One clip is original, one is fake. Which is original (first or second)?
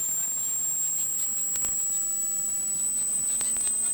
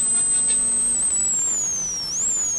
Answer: second